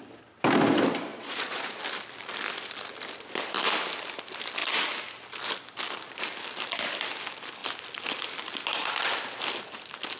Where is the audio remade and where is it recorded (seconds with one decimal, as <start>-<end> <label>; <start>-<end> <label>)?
0.0-1.1 recorded; 1.1-1.8 remade; 1.8-10.2 recorded